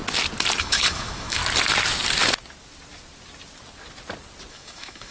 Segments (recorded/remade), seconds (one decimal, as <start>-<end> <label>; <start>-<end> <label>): 0.0-0.6 recorded; 0.6-1.4 remade; 1.4-4.5 recorded; 4.5-5.1 remade